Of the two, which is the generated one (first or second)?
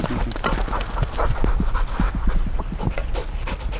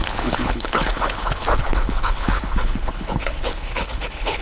second